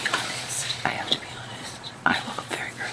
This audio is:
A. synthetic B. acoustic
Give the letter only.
A